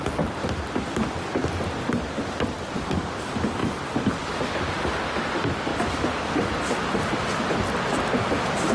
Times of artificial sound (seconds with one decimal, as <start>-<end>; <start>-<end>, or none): 0.0-1.4; 1.9-5.7; 6.3-8.7